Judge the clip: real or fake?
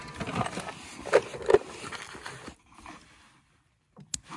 real